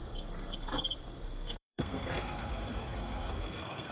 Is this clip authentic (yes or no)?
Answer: no